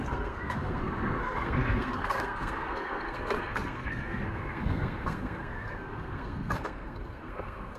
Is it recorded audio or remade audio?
remade